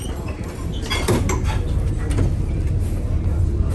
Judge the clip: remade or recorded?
recorded